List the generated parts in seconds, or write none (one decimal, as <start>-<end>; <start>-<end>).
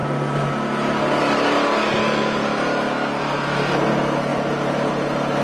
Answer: 4.3-4.9